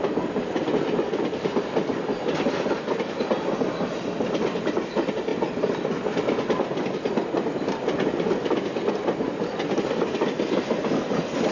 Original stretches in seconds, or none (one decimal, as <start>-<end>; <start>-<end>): 0.0-11.5